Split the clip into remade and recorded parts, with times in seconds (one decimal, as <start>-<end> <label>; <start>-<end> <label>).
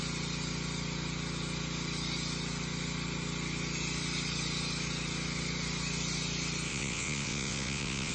0.0-6.7 recorded; 6.7-8.1 remade